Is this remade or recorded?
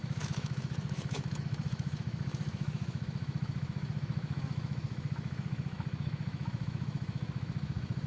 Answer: remade